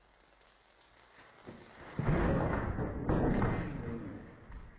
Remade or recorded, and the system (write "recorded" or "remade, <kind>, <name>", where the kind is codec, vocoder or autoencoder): recorded